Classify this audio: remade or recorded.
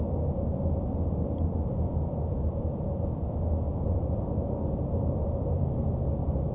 remade